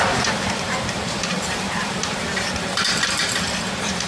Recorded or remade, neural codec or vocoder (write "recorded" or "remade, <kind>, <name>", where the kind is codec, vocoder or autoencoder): remade, vocoder, BigVGAN v2